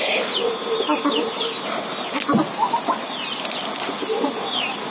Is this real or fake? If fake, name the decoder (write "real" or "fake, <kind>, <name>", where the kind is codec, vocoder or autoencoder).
real